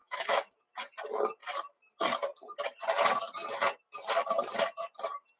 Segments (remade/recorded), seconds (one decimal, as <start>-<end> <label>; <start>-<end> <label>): 0.0-0.6 remade; 0.6-5.4 recorded

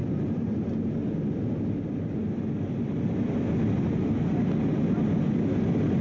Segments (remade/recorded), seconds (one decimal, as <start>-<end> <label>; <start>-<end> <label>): 0.0-6.0 recorded

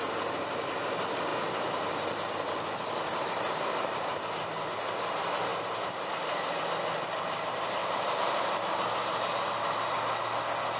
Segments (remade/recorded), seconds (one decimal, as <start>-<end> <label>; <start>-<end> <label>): 0.0-3.1 recorded; 3.1-4.7 remade; 4.7-5.5 recorded; 5.5-6.7 remade; 6.7-7.8 recorded; 7.8-9.3 remade; 9.3-10.8 recorded

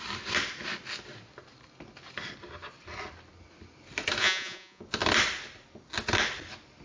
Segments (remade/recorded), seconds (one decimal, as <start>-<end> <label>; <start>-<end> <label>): 0.0-4.2 recorded; 4.2-4.8 remade; 4.8-6.8 recorded

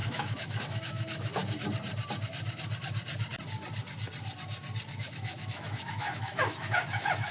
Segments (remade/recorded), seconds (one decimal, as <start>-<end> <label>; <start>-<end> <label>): 0.0-1.4 remade; 1.4-4.9 recorded; 4.9-7.3 remade